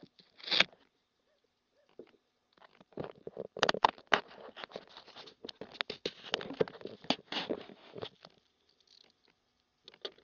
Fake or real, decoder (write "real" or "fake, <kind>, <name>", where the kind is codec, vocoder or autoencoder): real